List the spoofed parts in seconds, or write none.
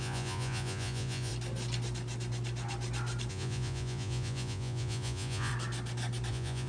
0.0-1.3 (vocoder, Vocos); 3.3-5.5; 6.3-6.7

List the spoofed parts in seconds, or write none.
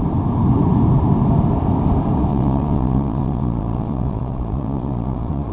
2.3-5.5 (vocoder, Vocos)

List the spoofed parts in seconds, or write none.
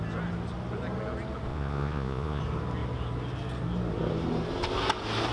1.5-2.4 (vocoder, Vocos)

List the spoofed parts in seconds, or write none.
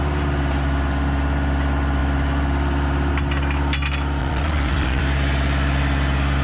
4.2-5.0 (vocoder, Vocos)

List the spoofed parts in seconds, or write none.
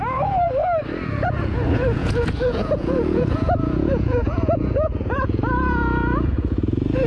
0.0-0.6 (vocoder, Vocos); 1.1-7.1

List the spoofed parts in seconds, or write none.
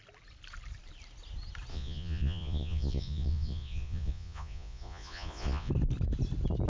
1.7-5.7 (vocoder, Vocos)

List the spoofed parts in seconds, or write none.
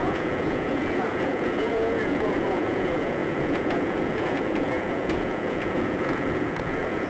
0.0-7.1 (vocoder, Vocos)